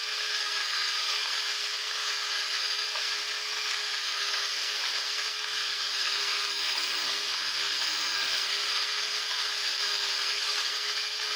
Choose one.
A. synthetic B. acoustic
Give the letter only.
A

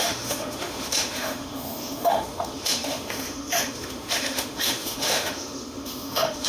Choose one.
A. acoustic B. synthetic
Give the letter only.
B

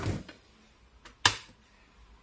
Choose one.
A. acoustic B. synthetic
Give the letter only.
A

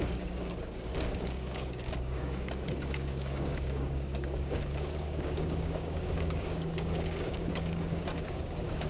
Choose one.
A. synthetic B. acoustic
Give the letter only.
A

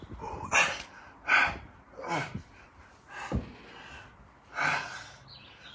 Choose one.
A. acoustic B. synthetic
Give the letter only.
A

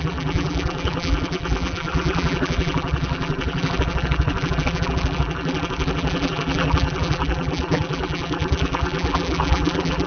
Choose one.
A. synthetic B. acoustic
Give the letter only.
A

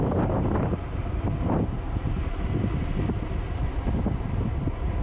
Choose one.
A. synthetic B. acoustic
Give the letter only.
A